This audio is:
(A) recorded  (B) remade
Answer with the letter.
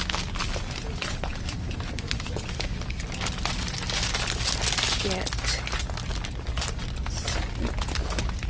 A